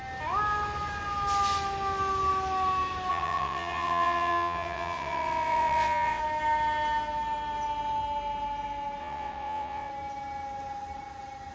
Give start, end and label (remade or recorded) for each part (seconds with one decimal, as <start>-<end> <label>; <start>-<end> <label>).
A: 0.0-3.1 recorded; 3.1-6.2 remade; 6.2-9.0 recorded; 9.0-9.9 remade; 9.9-11.5 recorded